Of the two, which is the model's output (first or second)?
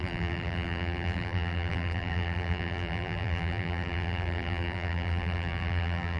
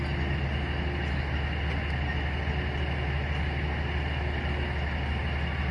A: first